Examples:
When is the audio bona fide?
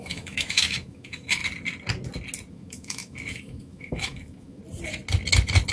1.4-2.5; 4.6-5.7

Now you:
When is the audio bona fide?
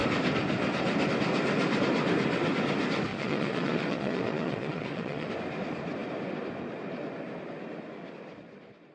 0.0-3.1; 5.3-8.9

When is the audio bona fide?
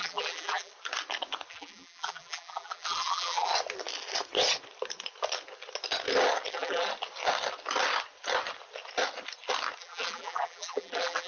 0.7-1.5; 3.5-6.5; 6.9-9.8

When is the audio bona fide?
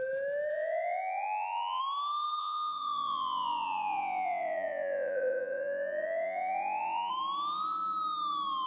0.0-0.5; 1.8-2.4; 7.1-8.7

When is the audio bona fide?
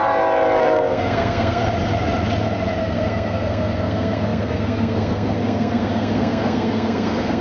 0.0-0.6; 1.6-2.8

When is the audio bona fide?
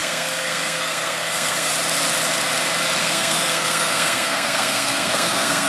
1.7-3.0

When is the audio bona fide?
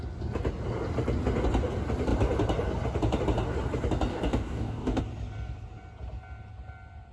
0.0-4.1; 5.0-7.1